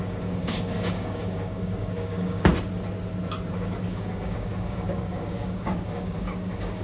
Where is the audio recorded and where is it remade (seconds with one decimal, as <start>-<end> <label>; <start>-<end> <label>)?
0.0-2.5 remade; 2.5-3.5 recorded; 3.5-6.8 remade